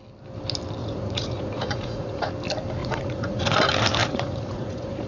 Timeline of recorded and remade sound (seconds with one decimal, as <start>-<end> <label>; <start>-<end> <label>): 0.0-0.8 recorded; 0.8-2.3 remade; 2.3-2.8 recorded; 2.8-3.4 remade; 3.4-4.0 recorded; 4.0-5.1 remade